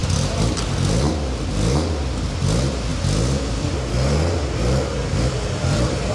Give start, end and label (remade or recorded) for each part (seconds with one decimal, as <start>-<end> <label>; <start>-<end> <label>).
0.0-6.1 recorded